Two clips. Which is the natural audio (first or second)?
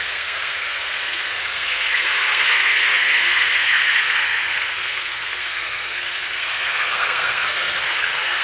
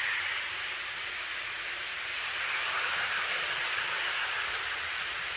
second